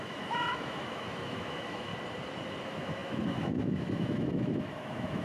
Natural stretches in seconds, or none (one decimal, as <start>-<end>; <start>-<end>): 1.9-2.6

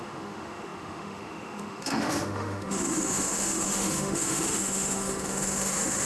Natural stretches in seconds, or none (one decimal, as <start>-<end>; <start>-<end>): none

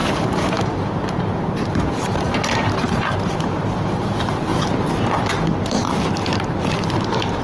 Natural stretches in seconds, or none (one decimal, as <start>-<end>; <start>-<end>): 4.5-5.3; 5.9-6.6

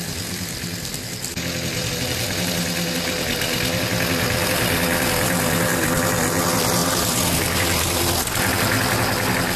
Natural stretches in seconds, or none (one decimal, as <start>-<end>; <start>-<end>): 0.0-9.6

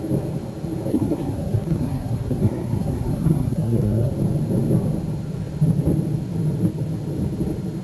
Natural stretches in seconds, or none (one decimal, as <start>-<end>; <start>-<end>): 0.0-0.9; 4.1-7.8

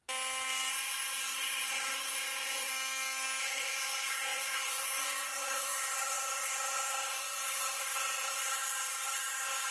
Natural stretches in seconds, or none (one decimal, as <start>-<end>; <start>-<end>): 0.0-0.7; 2.7-3.4

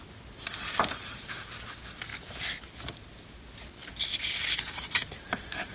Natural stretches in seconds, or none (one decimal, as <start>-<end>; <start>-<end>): 0.0-5.7

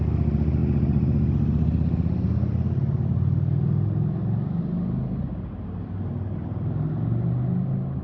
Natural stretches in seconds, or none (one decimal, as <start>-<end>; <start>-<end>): 0.0-8.0